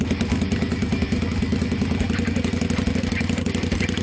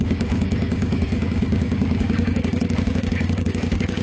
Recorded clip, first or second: first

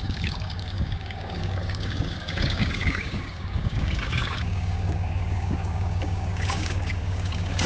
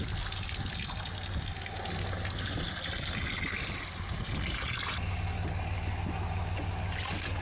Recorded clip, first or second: second